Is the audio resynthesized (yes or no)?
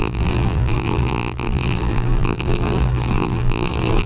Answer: yes